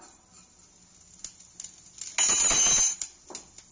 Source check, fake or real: real